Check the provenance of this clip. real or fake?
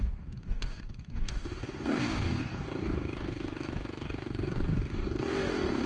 fake